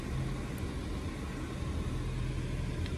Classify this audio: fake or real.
real